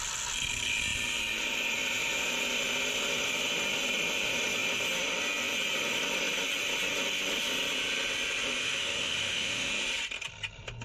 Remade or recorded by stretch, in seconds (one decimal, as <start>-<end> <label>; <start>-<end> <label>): 0.0-8.6 recorded; 8.6-9.7 remade; 9.7-10.8 recorded